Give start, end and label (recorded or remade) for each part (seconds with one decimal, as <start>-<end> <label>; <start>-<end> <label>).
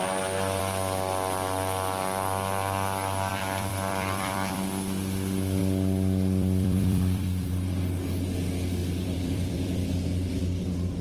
0.0-3.3 recorded; 3.3-4.6 remade; 4.6-5.6 recorded; 5.6-7.8 remade; 7.8-8.8 recorded; 8.8-10.4 remade; 10.4-11.0 recorded